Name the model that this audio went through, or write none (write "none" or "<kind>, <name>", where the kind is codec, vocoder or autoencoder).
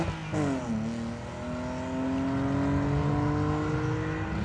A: none